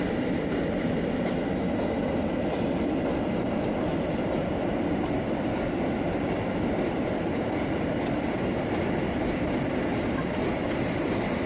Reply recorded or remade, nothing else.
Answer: remade